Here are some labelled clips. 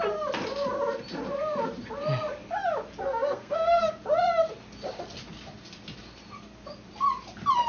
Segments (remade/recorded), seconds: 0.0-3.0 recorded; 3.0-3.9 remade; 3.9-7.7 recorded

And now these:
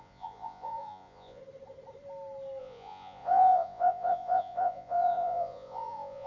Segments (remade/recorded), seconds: 0.0-1.4 remade; 1.4-2.6 recorded; 2.6-6.3 remade

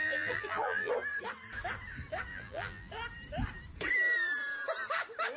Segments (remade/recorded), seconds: 0.0-0.9 remade; 0.9-2.3 recorded; 2.3-2.9 remade; 2.9-5.4 recorded

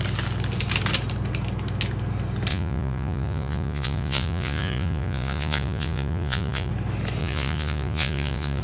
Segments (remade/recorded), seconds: 0.0-2.5 recorded; 2.5-6.7 remade; 6.7-7.2 recorded; 7.2-8.6 remade

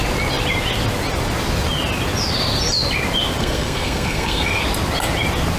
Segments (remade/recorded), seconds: 0.0-3.4 recorded; 3.4-4.6 remade; 4.6-5.6 recorded